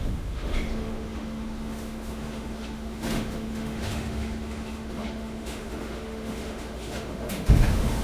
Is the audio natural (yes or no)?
no